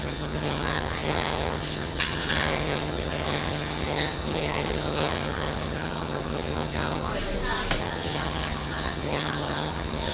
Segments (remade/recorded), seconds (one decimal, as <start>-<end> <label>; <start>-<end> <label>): 0.0-7.1 remade; 7.1-7.8 recorded; 7.8-10.1 remade